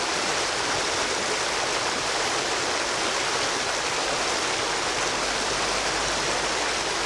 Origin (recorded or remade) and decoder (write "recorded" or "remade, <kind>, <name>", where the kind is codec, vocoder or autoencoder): recorded